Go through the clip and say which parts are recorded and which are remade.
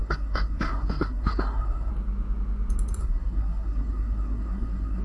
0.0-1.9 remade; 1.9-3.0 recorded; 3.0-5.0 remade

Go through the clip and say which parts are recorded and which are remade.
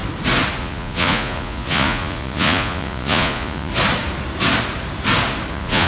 0.0-0.6 recorded; 0.6-3.7 remade; 3.7-5.5 recorded; 5.5-5.9 remade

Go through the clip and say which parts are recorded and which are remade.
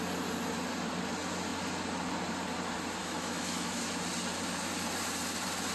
0.0-3.0 recorded; 3.0-3.8 remade; 3.8-5.7 recorded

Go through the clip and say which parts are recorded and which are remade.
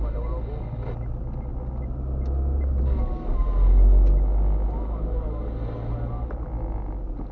0.0-7.3 recorded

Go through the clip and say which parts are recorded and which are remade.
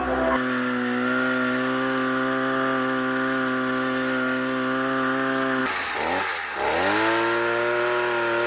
0.0-8.5 recorded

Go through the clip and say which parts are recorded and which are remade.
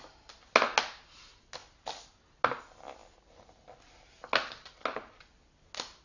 0.0-6.0 recorded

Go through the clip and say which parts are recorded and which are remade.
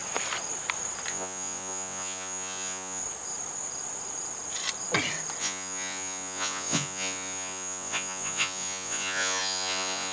0.0-1.1 recorded; 1.1-3.0 remade; 3.0-5.4 recorded; 5.4-10.1 remade